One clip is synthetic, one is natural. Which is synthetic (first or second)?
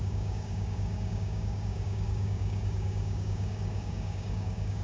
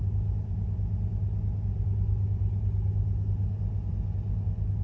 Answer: first